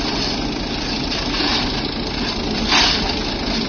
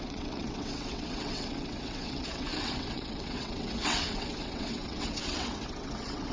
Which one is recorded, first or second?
first